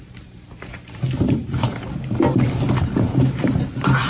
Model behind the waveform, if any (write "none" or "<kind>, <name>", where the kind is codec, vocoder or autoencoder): vocoder, BigVGAN v2